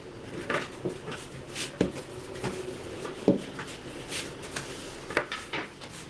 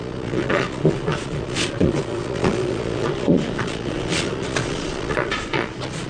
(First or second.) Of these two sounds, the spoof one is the second